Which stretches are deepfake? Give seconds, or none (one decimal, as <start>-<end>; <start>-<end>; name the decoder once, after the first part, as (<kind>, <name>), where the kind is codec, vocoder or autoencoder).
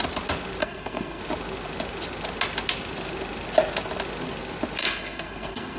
0.6-1.2 (codec, SNAC); 4.8-5.8